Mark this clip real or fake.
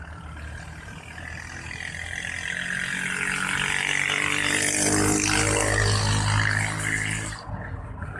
real